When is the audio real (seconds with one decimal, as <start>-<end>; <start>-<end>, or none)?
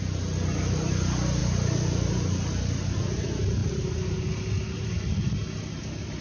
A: 0.0-6.2